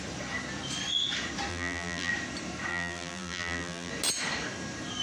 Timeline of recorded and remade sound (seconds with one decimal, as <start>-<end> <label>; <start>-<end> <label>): 0.0-1.5 recorded; 1.5-2.1 remade; 2.1-2.7 recorded; 2.7-3.9 remade; 3.9-5.0 recorded